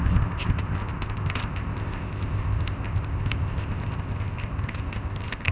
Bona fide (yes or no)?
no